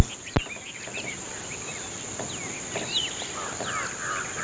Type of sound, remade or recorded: recorded